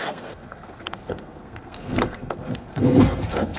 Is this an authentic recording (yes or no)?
no